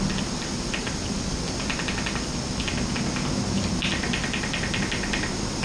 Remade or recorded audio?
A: recorded